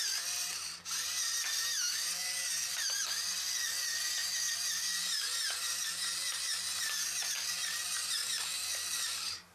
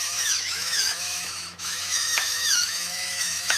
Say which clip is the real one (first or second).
first